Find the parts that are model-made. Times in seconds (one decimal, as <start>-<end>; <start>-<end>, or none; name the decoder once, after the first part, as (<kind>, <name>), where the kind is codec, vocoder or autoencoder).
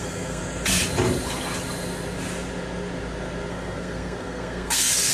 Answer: 0.0-0.4 (codec, SNAC); 3.5-5.1